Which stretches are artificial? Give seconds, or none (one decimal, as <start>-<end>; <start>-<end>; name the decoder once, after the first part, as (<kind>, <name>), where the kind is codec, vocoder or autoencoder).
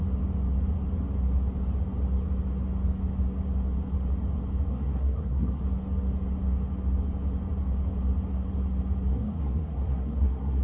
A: 4.7-5.6 (codec, SNAC); 9.1-10.6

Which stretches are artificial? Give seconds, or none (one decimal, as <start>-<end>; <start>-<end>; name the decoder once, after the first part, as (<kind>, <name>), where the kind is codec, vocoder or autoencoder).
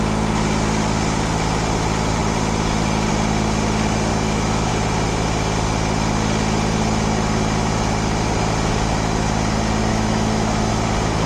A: 4.1-4.7 (autoencoder, DAC-VAE); 9.9-10.7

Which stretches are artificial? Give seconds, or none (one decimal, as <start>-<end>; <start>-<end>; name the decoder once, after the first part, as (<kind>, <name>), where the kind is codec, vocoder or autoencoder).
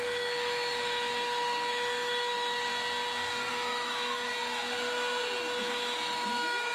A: 0.0-2.7 (autoencoder, DAC-VAE); 3.5-4.3; 5.6-6.7